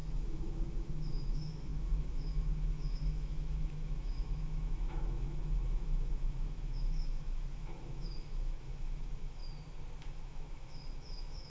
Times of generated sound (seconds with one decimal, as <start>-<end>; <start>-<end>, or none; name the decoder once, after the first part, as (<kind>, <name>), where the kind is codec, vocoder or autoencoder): 0.0-9.4 (autoencoder, DAC-VAE); 10.0-11.5